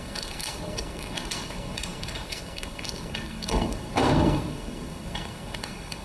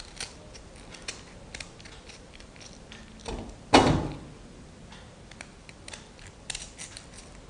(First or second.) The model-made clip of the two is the first